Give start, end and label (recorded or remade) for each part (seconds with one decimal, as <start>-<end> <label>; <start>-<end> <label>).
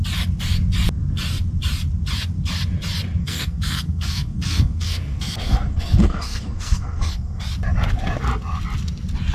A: 0.0-3.2 recorded; 3.2-7.4 remade; 7.4-9.3 recorded